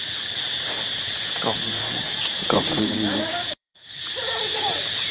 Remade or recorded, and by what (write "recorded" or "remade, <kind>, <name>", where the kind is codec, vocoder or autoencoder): remade, vocoder, Vocos